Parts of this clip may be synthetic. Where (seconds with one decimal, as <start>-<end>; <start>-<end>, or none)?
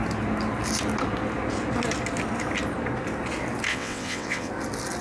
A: 3.7-4.5